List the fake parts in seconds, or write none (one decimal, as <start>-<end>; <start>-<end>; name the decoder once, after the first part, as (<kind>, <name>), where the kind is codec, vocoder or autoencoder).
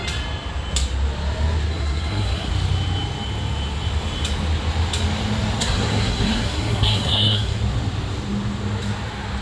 1.7-2.5 (codec, SNAC); 5.6-7.6